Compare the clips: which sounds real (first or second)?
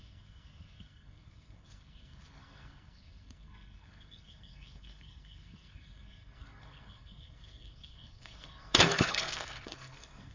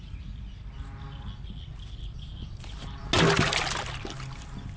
second